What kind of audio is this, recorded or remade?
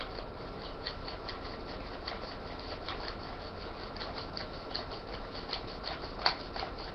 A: recorded